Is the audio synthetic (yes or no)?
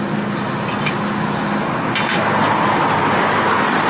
no